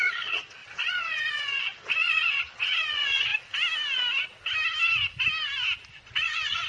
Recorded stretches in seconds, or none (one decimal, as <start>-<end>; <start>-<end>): 3.3-5.9